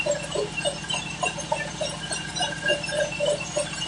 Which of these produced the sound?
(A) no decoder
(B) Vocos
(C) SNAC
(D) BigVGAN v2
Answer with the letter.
A